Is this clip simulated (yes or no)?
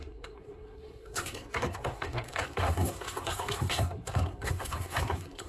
yes